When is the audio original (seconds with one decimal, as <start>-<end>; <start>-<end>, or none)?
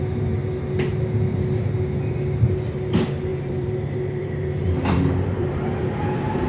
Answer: 0.0-3.3; 5.5-6.5